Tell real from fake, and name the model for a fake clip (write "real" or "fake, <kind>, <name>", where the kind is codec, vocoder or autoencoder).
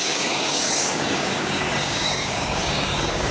fake, codec, DAC